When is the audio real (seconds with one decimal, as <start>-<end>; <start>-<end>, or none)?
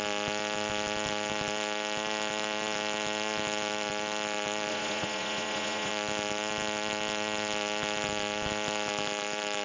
0.0-4.7; 5.9-9.6